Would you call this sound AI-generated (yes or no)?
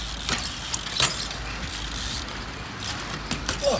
no